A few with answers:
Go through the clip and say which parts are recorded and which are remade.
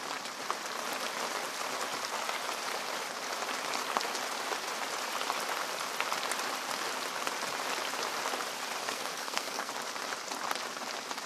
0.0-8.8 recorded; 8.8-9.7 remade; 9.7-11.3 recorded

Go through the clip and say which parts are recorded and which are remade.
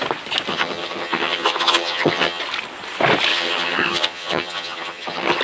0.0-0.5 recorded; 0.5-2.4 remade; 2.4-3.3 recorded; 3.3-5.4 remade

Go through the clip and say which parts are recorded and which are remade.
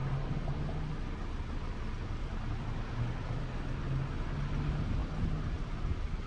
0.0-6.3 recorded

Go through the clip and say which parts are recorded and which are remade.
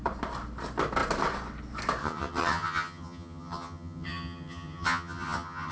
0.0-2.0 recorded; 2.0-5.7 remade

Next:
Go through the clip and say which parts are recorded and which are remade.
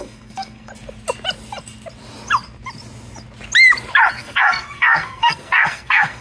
0.0-0.7 remade; 0.7-4.1 recorded; 4.1-6.2 remade